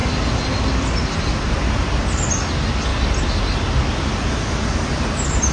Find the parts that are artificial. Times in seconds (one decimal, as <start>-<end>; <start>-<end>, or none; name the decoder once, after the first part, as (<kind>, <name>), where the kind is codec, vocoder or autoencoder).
none